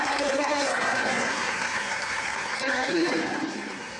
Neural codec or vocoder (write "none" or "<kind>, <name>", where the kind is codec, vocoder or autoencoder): codec, SNAC